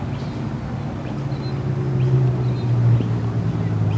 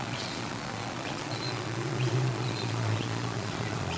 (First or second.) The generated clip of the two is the second